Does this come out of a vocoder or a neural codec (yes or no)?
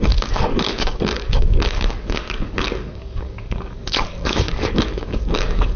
yes